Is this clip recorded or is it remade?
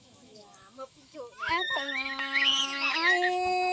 remade